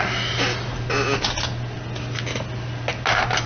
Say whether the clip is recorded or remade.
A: recorded